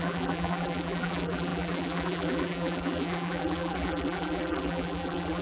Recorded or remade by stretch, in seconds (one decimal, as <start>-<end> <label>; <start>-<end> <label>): 0.0-5.4 remade